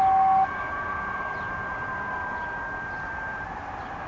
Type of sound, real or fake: real